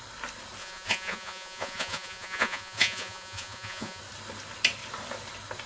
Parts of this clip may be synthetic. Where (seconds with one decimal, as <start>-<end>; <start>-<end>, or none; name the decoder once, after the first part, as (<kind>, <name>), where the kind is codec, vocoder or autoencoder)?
0.6-4.0 (vocoder, Vocos)